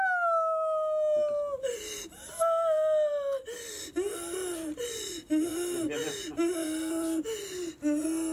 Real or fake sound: real